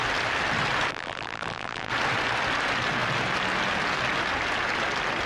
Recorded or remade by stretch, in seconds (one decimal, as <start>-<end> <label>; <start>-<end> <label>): 0.0-0.9 recorded; 0.9-1.9 remade; 1.9-5.3 recorded